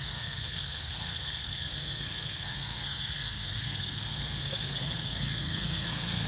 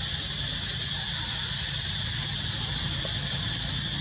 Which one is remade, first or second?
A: first